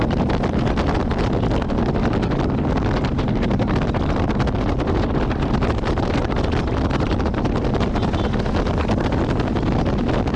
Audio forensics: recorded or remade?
recorded